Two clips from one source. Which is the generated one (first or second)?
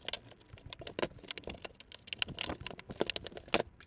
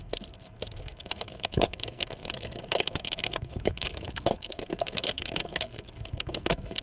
second